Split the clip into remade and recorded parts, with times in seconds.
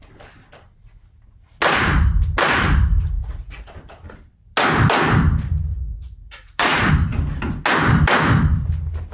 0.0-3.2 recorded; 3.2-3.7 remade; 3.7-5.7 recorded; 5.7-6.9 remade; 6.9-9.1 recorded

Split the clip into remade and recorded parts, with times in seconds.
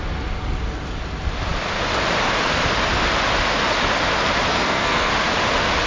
0.0-4.5 recorded; 4.5-5.1 remade; 5.1-5.9 recorded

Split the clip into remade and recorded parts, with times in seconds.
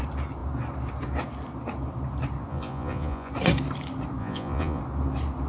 0.0-2.5 recorded; 2.5-3.3 remade; 3.3-4.2 recorded; 4.2-4.8 remade; 4.8-5.5 recorded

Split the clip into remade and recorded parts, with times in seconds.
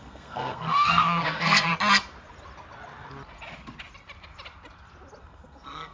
0.0-1.7 remade; 1.7-5.2 recorded; 5.2-5.9 remade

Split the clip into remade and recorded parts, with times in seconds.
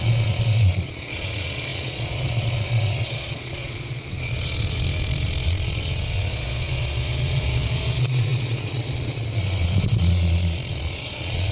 0.0-11.5 remade